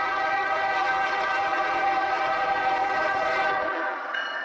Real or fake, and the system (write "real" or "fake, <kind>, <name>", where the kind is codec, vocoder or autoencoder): fake, vocoder, Vocos